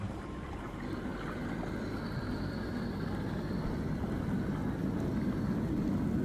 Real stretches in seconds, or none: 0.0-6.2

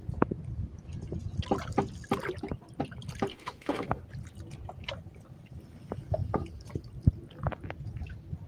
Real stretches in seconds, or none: 0.0-3.3; 4.0-8.5

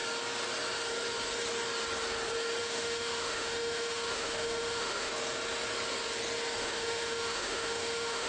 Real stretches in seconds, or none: 0.0-2.6; 5.1-6.6

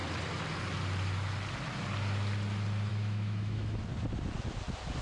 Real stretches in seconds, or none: 0.0-2.9; 3.8-5.0